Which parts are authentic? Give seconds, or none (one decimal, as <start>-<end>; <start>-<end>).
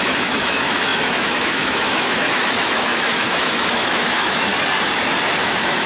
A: 4.5-5.4